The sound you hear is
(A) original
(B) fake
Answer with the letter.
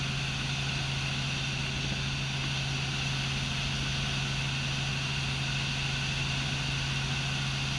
A